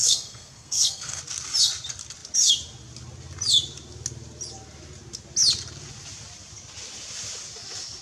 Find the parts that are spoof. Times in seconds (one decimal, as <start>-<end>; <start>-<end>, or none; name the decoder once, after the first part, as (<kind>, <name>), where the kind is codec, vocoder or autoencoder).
0.0-1.2 (codec, SNAC)

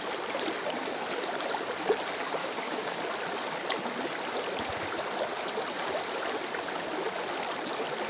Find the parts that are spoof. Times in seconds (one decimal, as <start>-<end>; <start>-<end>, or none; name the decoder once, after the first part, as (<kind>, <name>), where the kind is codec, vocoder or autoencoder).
2.4-3.0 (codec, DAC)

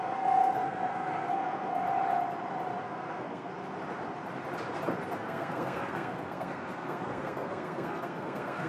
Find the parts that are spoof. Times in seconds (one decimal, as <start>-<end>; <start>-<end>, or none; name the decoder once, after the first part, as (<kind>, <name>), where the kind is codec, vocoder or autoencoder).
0.0-1.8 (codec, SNAC); 2.8-3.5; 5.1-8.7

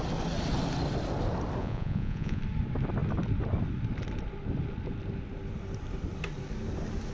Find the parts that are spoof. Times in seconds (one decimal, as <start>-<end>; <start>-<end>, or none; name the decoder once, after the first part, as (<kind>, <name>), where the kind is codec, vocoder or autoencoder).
1.6-2.4 (vocoder, Vocos)

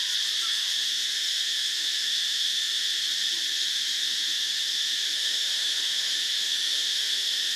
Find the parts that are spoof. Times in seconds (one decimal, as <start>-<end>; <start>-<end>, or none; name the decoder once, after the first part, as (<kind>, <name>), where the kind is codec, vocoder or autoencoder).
0.5-2.9 (autoencoder, DAC-VAE); 3.5-7.6

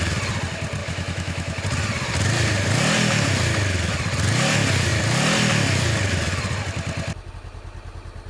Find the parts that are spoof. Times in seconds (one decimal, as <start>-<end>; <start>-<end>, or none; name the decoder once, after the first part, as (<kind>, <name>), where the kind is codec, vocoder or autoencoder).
0.8-1.6 (autoencoder, DAC-VAE)

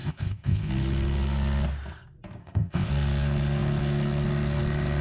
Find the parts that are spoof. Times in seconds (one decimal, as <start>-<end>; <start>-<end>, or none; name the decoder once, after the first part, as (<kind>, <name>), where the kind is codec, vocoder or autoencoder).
0.0-0.7 (codec, ZipCodec); 2.4-2.9